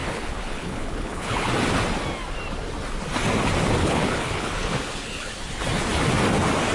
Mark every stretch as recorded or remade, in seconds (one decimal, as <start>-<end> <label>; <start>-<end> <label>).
0.0-1.5 remade; 1.5-3.8 recorded; 3.8-5.3 remade; 5.3-6.7 recorded